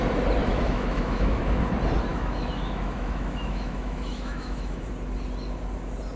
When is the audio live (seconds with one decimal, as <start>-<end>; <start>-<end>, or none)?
0.0-0.4; 1.4-2.1; 4.9-6.2